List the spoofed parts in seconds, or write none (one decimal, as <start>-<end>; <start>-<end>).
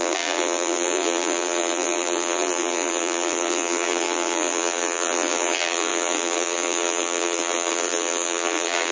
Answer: 0.0-8.9